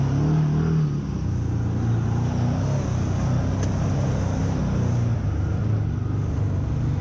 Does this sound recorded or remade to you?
recorded